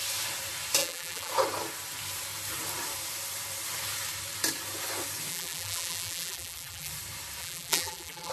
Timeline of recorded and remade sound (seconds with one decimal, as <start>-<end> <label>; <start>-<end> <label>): 0.0-0.8 recorded; 0.8-1.3 remade; 1.3-5.3 recorded; 5.3-6.9 remade; 6.9-7.4 recorded; 7.4-8.3 remade